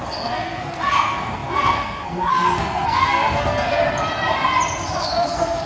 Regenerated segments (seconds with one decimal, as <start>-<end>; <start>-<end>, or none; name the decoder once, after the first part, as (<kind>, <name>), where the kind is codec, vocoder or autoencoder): 0.0-3.8 (codec, SNAC); 4.9-5.7